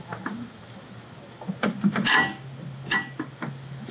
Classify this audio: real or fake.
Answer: real